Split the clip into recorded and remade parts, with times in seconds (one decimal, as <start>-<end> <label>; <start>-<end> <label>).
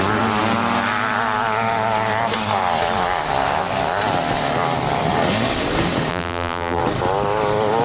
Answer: 0.0-6.1 recorded; 6.1-6.8 remade; 6.8-7.8 recorded